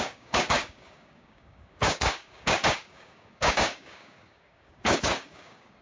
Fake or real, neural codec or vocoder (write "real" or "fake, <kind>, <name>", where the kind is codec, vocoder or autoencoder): fake, codec, DAC